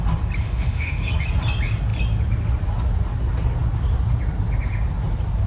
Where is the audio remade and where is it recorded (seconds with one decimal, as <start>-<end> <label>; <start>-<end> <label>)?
0.0-0.4 recorded; 0.4-1.1 remade; 1.1-5.5 recorded

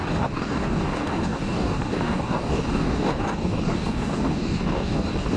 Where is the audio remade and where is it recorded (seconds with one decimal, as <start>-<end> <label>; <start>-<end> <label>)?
0.0-5.4 remade

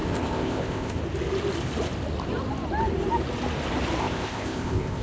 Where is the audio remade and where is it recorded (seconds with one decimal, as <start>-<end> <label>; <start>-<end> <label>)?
0.0-1.0 remade; 1.0-4.0 recorded; 4.0-5.0 remade

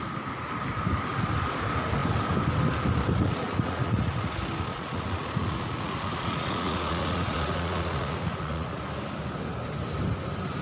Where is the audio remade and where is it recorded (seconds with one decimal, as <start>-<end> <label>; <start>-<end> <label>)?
0.0-3.2 recorded; 3.2-4.3 remade; 4.3-4.7 recorded; 4.7-8.8 remade; 8.8-10.6 recorded

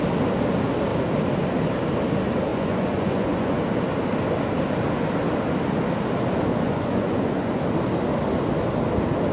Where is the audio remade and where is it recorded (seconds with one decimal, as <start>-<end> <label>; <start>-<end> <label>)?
0.0-2.5 recorded; 2.5-3.6 remade; 3.6-6.5 recorded; 6.5-7.6 remade; 7.6-9.3 recorded

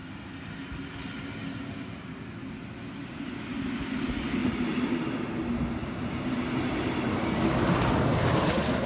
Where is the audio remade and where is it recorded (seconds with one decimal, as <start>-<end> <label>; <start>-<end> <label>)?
0.0-4.4 recorded; 4.4-5.2 remade; 5.2-8.9 recorded